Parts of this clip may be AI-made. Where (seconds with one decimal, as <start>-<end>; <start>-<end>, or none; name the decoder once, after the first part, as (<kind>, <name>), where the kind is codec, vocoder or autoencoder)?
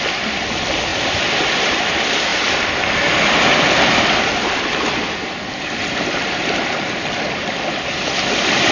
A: 0.0-2.3 (vocoder, BigVGAN v2); 4.0-8.7